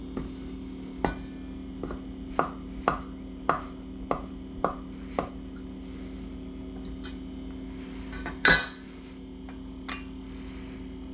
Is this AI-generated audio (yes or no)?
no